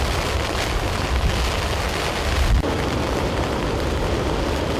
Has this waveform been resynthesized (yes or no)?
no